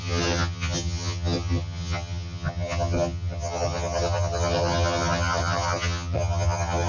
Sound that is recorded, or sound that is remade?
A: remade